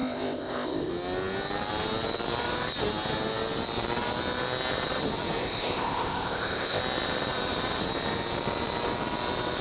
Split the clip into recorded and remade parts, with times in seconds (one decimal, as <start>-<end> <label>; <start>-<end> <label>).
0.0-0.9 remade; 0.9-5.4 recorded; 5.4-6.8 remade; 6.8-9.6 recorded